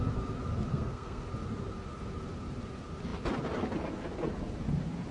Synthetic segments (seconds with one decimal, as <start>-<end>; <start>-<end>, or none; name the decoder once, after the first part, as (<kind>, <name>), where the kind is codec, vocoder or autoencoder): 0.7-1.2 (codec, SNAC)